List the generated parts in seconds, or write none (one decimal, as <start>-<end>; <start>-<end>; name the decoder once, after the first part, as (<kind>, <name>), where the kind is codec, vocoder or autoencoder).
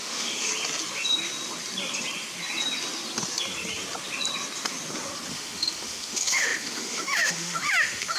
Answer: 0.0-0.5 (autoencoder, DAC-VAE); 5.3-8.2